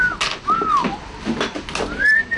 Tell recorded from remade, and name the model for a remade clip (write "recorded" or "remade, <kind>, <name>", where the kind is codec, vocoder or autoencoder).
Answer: recorded